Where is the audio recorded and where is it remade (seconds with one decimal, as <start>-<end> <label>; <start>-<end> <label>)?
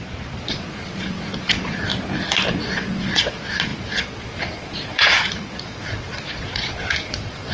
0.0-1.9 remade; 1.9-2.5 recorded; 2.5-7.5 remade